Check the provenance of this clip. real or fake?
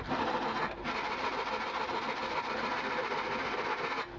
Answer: real